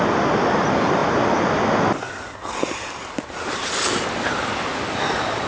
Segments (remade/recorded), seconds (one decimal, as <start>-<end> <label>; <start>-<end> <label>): 0.0-5.5 recorded